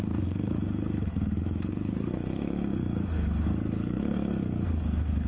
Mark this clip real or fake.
fake